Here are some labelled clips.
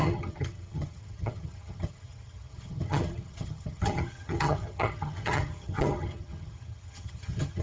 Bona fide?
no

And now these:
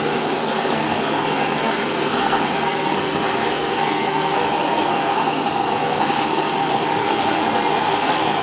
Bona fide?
no